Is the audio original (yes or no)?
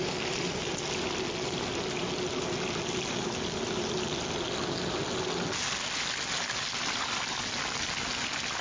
yes